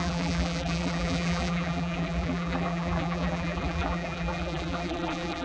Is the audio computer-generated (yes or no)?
yes